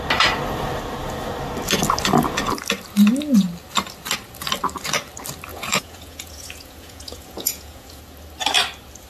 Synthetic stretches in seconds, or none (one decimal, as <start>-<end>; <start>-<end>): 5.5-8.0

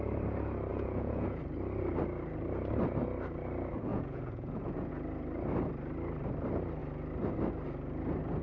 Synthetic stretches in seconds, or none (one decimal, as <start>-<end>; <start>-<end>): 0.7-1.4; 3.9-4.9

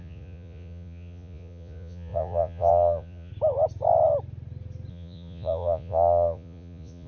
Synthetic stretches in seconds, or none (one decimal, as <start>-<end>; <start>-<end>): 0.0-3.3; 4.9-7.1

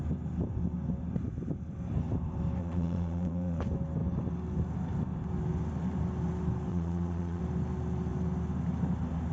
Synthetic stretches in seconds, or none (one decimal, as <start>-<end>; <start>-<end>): 2.6-3.6; 6.7-7.4

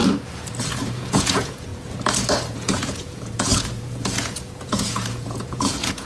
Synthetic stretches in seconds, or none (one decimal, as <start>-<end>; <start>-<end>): 0.8-1.7; 2.5-6.1